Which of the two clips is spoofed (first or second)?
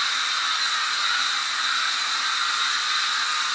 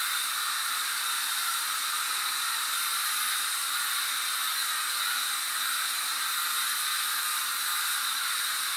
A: second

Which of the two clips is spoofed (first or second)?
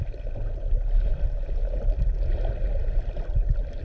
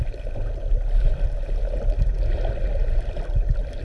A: first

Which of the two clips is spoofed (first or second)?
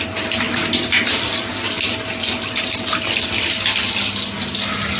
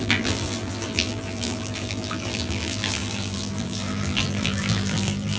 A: second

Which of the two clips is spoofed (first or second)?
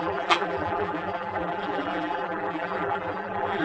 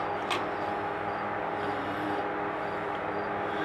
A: first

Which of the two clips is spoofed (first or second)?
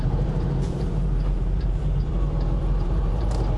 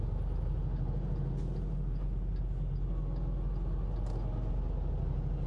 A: first